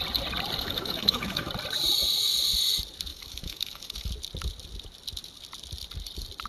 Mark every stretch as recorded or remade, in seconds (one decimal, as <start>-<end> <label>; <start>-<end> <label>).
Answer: 0.0-0.6 recorded; 0.6-1.5 remade; 1.5-3.1 recorded; 3.1-4.1 remade; 4.1-6.5 recorded